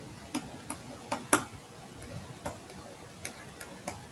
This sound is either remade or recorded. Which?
recorded